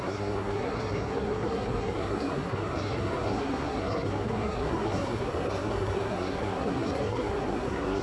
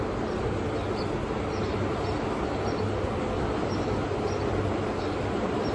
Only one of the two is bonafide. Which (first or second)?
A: second